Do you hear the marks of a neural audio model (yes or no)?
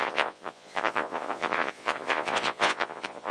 yes